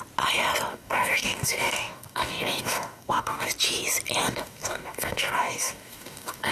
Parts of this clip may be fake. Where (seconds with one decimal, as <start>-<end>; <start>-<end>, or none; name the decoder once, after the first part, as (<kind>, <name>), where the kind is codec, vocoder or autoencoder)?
0.7-3.5 (codec, DAC); 4.2-6.5